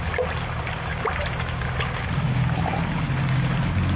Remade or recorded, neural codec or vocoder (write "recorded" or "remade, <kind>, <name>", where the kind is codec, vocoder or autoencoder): recorded